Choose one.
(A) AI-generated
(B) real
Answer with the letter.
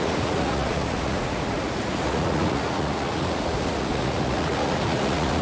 A